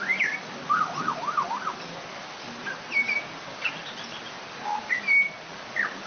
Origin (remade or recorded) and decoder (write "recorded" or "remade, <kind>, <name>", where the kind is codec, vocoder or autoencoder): recorded